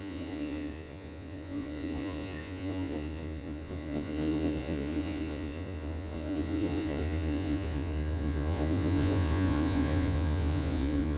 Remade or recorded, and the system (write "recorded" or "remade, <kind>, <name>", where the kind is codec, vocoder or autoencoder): remade, vocoder, Vocos